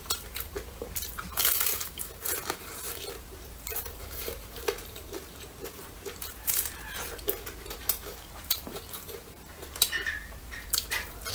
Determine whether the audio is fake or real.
fake